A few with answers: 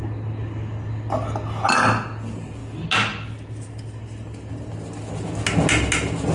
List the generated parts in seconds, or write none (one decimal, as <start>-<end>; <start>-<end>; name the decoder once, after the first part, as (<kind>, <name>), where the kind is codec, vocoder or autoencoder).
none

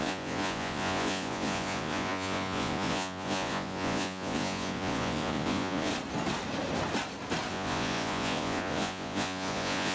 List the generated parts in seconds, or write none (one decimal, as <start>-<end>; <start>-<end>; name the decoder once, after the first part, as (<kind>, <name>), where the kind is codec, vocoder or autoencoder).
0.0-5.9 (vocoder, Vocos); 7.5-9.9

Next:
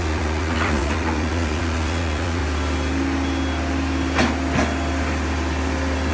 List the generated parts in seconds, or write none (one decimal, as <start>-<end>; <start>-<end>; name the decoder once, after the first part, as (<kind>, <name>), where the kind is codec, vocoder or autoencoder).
0.0-2.4 (vocoder, Vocos)

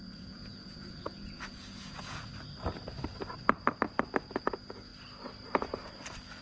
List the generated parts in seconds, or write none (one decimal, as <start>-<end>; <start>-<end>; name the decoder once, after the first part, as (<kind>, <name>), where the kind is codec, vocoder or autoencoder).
0.0-2.3 (vocoder, Vocos); 4.4-4.9

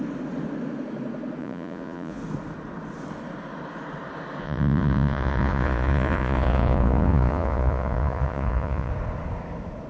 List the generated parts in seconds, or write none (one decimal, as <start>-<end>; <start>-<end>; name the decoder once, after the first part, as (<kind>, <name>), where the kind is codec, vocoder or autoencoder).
1.4-2.2 (vocoder, Vocos); 4.4-8.9

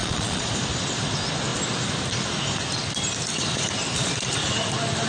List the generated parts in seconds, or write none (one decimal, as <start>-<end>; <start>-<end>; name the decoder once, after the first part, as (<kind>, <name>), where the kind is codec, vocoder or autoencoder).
0.0-0.5 (vocoder, Vocos)